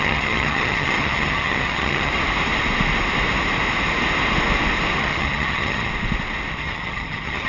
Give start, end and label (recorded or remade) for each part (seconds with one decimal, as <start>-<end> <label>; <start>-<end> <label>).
0.0-2.1 remade; 2.1-5.0 recorded; 5.0-5.9 remade; 5.9-6.6 recorded; 6.6-7.5 remade